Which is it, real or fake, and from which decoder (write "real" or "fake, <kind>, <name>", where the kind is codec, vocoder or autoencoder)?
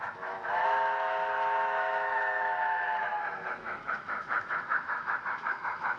fake, autoencoder, DAC-VAE